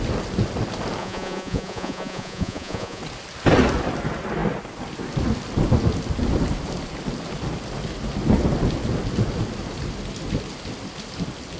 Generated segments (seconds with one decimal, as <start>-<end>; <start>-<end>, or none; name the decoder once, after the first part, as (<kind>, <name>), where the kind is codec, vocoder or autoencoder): 1.0-3.0 (vocoder, Vocos)